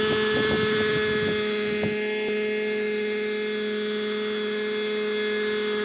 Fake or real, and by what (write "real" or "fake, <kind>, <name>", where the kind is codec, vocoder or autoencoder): real